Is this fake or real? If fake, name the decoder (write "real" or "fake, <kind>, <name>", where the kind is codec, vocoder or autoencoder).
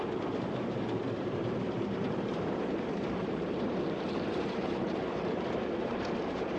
fake, vocoder, BigVGAN v2